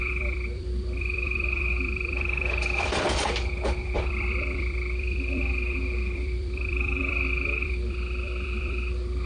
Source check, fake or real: fake